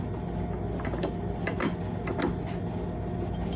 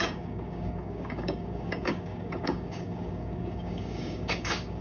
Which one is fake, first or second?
second